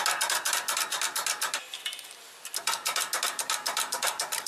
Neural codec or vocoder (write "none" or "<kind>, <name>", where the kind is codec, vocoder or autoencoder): none